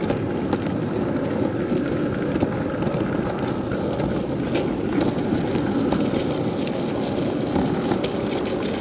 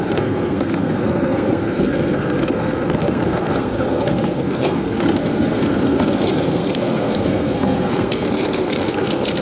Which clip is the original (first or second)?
first